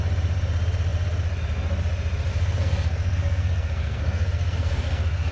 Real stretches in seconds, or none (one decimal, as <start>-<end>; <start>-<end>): 0.0-2.3